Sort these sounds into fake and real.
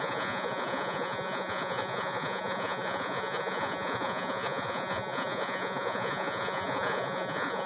fake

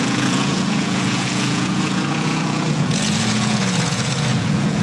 fake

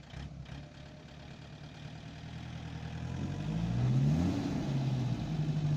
real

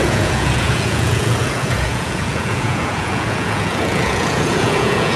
fake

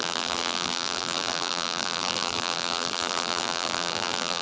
fake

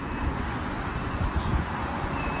fake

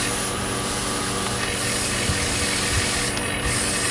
real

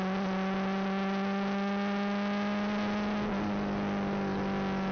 real